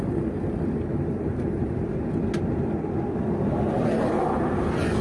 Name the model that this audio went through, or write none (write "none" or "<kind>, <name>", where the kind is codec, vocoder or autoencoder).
none